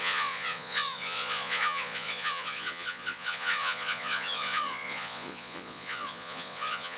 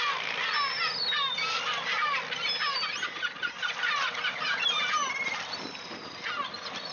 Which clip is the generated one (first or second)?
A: first